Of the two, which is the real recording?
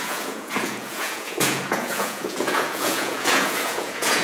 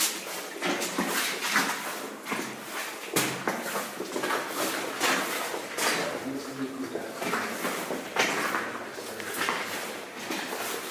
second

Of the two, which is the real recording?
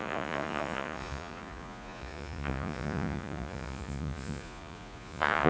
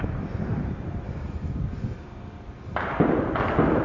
second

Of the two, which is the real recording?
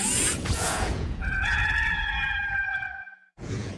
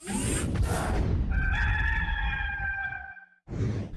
second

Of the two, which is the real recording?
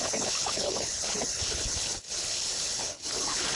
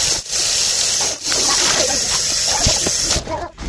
second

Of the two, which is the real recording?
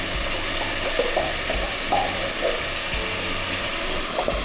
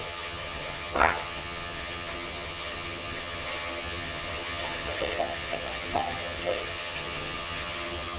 first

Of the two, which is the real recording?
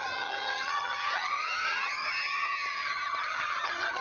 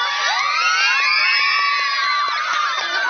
second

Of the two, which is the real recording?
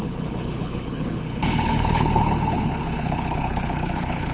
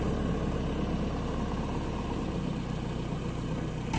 second